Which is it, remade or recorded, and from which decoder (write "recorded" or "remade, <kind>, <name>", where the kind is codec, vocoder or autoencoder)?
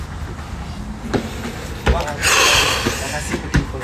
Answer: recorded